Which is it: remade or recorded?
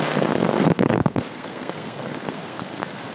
remade